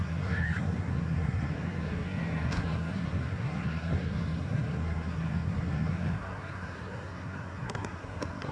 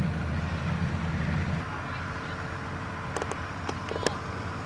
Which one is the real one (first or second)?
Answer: second